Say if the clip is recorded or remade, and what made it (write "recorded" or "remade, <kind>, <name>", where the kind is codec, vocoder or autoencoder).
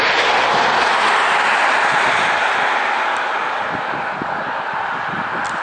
recorded